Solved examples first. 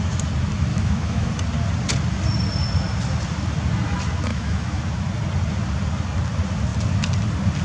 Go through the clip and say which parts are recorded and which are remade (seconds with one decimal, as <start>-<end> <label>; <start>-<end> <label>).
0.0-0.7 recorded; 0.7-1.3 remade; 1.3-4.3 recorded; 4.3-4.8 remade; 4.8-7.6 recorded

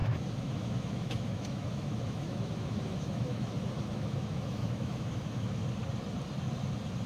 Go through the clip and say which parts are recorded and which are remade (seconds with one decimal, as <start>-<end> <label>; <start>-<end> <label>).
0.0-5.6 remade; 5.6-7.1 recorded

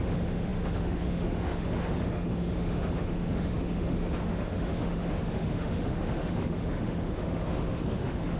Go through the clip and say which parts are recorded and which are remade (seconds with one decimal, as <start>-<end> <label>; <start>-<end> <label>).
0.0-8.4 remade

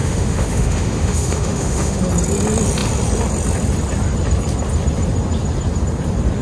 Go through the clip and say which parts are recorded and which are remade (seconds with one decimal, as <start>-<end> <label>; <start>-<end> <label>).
0.0-2.0 remade; 2.0-6.4 recorded

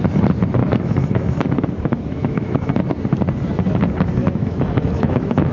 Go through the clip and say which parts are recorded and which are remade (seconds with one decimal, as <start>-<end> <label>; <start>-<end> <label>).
0.0-0.6 recorded; 0.6-2.7 remade; 2.7-4.2 recorded; 4.2-5.5 remade

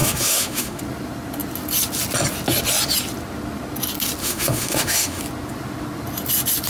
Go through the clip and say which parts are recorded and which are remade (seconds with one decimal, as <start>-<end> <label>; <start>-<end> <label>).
0.0-0.8 remade; 0.8-4.2 recorded; 4.2-5.2 remade; 5.2-6.7 recorded